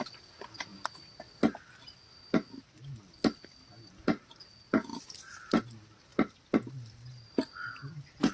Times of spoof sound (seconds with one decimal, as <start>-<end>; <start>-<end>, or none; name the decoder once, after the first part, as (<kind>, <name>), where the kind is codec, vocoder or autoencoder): none